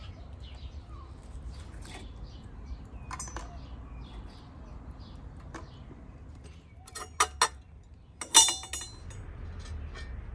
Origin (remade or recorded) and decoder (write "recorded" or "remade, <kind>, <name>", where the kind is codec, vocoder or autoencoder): recorded